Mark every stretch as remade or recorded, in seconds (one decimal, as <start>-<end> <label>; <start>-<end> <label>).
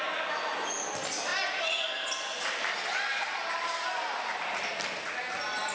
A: 0.0-5.7 recorded